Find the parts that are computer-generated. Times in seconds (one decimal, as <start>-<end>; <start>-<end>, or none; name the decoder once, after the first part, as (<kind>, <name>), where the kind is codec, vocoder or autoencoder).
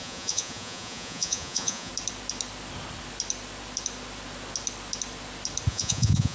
0.0-1.9 (vocoder, Vocos); 5.7-6.3